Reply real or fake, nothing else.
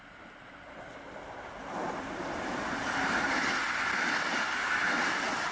real